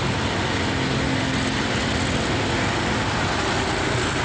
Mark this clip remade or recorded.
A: recorded